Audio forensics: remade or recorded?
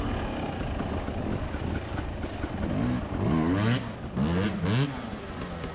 recorded